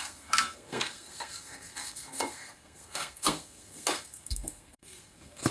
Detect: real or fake fake